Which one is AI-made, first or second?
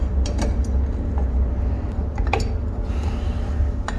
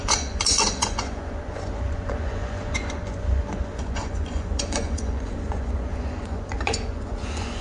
second